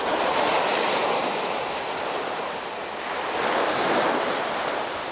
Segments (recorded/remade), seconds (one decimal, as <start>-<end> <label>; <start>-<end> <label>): 0.0-5.1 recorded